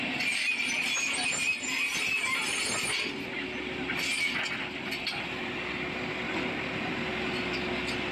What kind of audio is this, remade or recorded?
recorded